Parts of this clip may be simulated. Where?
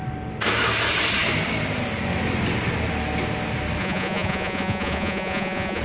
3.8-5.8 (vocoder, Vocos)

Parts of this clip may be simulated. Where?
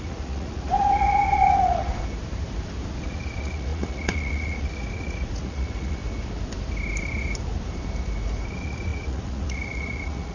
0.0-1.9 (vocoder, Vocos); 3.0-6.0; 8.5-10.3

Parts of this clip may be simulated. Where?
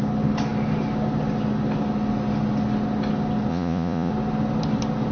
3.5-4.1 (vocoder, Vocos)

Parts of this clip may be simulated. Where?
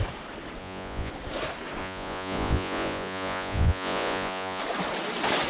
0.6-1.1 (vocoder, Vocos); 1.8-4.6